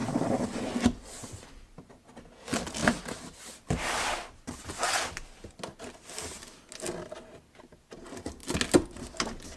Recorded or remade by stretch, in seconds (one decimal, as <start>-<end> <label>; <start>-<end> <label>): 0.0-9.6 recorded